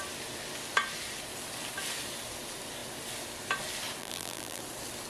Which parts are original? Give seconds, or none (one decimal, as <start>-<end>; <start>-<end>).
0.0-4.0; 4.6-5.1

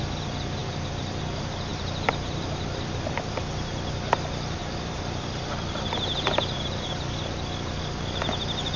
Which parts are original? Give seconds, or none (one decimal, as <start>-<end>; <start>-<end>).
0.0-0.6; 1.2-1.7; 3.3-4.6; 7.3-8.8